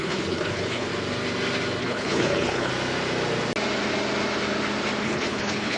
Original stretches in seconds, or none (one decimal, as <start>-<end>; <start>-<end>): 0.9-1.8; 2.7-5.0